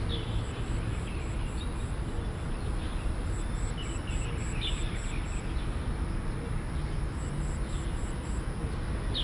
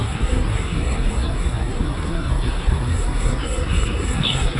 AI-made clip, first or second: second